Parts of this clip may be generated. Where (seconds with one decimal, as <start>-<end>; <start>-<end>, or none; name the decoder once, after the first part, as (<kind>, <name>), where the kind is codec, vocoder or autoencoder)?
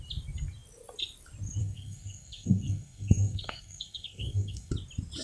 1.6-4.7 (codec, SNAC)